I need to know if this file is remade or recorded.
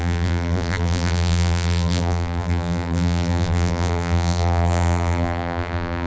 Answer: remade